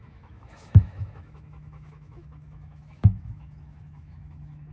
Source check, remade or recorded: remade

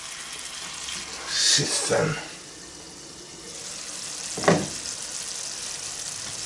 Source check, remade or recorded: recorded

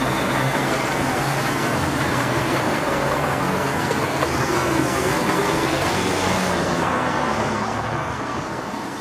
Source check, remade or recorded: remade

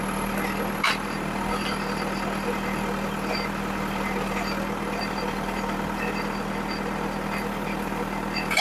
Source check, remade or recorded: recorded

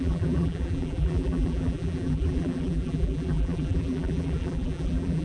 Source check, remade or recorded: remade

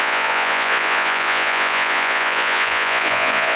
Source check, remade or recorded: remade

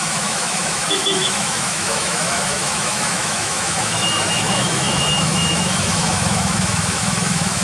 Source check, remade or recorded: remade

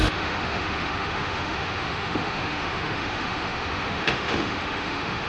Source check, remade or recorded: remade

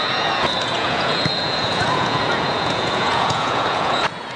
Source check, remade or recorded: remade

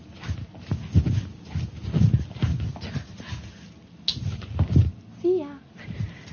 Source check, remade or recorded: recorded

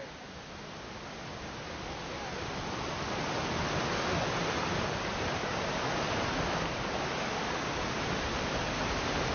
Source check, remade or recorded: recorded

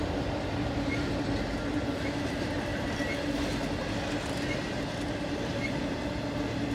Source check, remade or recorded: recorded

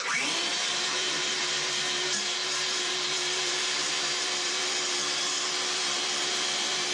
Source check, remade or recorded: remade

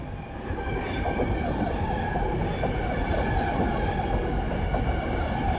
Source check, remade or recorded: recorded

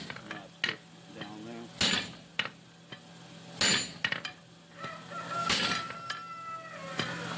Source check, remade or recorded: recorded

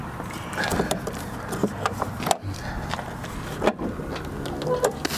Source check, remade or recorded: recorded